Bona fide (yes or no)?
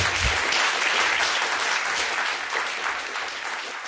yes